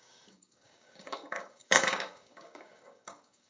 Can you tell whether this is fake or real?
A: fake